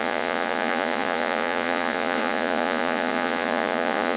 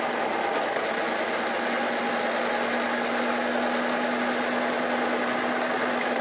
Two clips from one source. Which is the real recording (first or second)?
second